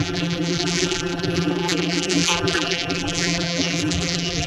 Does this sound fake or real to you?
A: fake